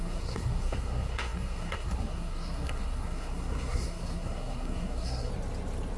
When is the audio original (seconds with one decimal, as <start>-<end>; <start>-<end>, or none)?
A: 5.3-6.0